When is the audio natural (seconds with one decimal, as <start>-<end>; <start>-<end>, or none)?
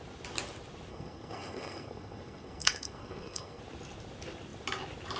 0.0-0.9; 3.6-5.2